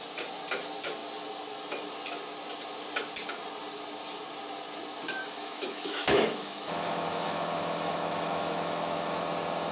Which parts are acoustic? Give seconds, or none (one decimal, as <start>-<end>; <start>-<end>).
0.0-5.2; 9.2-9.7